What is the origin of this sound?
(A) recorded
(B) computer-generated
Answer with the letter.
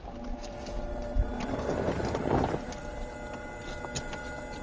A